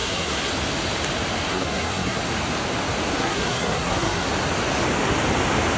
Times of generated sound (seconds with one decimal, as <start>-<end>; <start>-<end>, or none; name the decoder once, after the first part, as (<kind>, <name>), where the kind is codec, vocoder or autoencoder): 0.0-0.5 (codec, SNAC); 1.5-2.2; 3.1-4.3